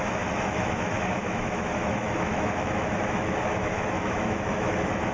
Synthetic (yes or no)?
yes